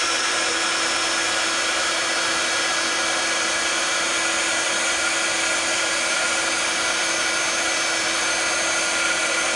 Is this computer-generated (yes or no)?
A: no